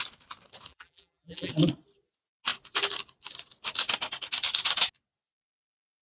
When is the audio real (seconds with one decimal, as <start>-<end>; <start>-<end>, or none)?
0.0-0.7; 1.5-6.0